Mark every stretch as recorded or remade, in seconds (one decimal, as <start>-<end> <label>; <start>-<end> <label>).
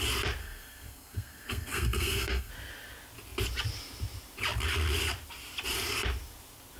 0.0-0.4 recorded; 0.4-2.5 remade; 2.5-6.8 recorded